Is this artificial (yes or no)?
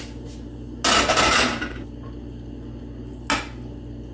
no